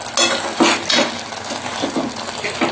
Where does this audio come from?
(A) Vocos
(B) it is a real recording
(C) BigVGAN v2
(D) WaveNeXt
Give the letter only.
B